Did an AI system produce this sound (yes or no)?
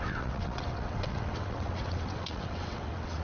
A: yes